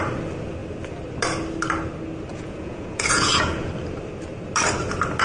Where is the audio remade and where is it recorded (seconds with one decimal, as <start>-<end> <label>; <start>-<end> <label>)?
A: 0.0-2.3 recorded; 2.3-3.7 remade; 3.7-5.2 recorded

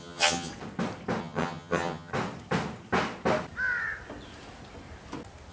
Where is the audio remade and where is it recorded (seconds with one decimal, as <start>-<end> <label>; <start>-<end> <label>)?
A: 0.0-0.5 remade; 0.5-1.2 recorded; 1.2-2.1 remade; 2.1-5.5 recorded

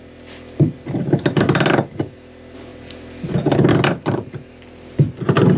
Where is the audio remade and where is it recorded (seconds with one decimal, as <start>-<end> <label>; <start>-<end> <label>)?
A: 0.0-5.6 recorded

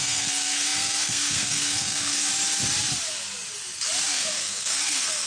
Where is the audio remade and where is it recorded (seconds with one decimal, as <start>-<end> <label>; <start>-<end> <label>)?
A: 0.0-2.3 remade; 2.3-4.1 recorded; 4.1-5.3 remade

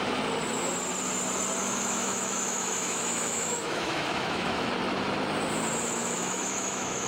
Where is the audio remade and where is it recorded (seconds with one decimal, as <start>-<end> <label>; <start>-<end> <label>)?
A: 0.0-1.6 recorded; 1.6-4.7 remade; 4.7-6.0 recorded; 6.0-7.1 remade

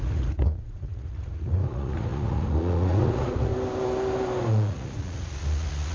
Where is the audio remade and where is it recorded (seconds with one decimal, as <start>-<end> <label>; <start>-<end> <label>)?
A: 0.0-3.5 remade; 3.5-4.5 recorded; 4.5-5.9 remade

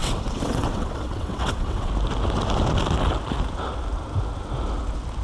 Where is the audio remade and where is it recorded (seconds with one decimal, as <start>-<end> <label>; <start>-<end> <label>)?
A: 0.0-1.9 remade; 1.9-5.2 recorded

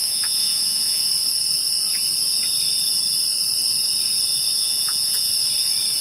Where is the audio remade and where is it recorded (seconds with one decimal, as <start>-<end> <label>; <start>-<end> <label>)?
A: 0.0-1.1 remade; 1.1-4.6 recorded; 4.6-5.3 remade; 5.3-6.0 recorded